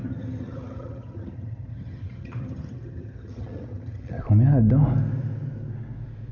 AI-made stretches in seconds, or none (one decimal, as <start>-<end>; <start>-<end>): 0.0-4.2